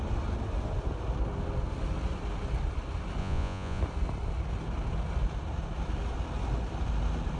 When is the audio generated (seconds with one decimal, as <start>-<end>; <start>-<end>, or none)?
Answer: 3.2-3.8